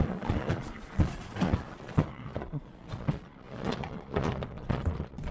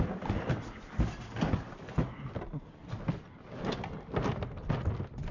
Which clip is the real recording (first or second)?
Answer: second